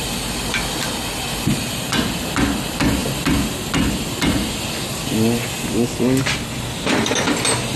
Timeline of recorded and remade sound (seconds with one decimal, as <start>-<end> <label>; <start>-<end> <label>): 0.0-7.8 recorded